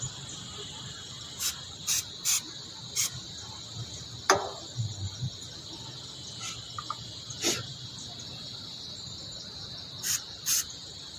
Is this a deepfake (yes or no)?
no